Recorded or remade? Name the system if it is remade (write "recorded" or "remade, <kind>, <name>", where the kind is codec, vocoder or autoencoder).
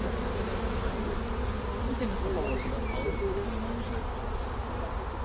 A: recorded